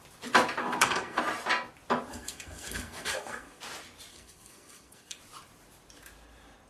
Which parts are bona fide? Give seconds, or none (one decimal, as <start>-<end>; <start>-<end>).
0.0-0.6; 1.2-2.1; 3.6-4.1; 5.2-6.7